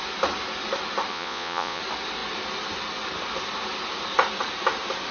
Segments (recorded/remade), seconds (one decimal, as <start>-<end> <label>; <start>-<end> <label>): 0.0-1.1 recorded; 1.1-1.8 remade; 1.8-5.1 recorded